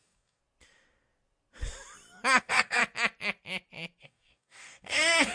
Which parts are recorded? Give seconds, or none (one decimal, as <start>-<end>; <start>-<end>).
0.4-2.4; 2.8-4.0

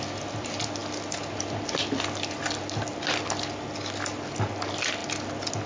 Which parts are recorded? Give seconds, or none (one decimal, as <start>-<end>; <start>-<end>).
0.0-5.7

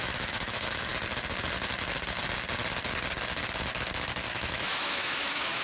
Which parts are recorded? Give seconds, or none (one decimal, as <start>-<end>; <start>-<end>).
0.9-4.3

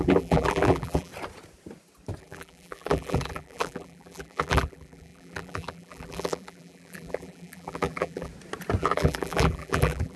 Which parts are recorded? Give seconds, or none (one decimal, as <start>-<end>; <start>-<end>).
1.1-2.2; 8.3-8.8

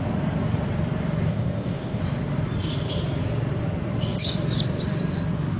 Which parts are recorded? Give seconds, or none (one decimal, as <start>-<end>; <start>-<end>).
0.0-1.3; 2.0-5.6